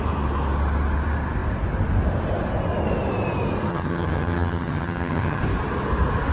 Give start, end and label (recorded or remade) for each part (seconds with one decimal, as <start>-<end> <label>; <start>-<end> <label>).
0.0-3.7 recorded; 3.7-5.4 remade; 5.4-6.3 recorded